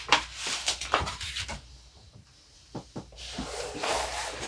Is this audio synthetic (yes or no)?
yes